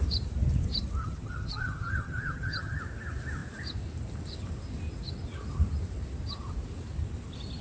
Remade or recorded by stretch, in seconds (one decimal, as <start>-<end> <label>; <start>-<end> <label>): 0.0-1.0 recorded; 1.0-2.8 remade; 2.8-7.6 recorded